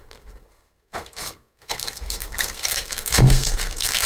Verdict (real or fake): fake